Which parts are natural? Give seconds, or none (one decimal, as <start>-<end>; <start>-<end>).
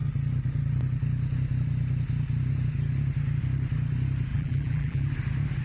0.0-4.3; 5.1-5.6